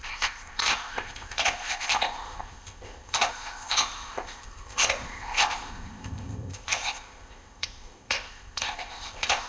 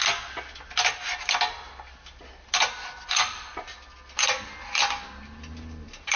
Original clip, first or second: second